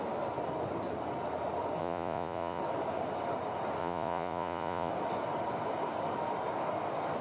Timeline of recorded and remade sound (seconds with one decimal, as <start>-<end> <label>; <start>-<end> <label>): 0.0-1.8 recorded; 1.8-2.6 remade; 2.6-3.8 recorded; 3.8-4.9 remade; 4.9-7.2 recorded